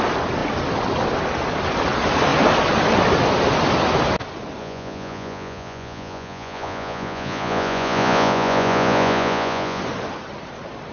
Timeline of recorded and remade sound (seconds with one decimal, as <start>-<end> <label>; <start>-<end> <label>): 0.0-4.6 recorded; 4.6-9.8 remade; 9.8-10.9 recorded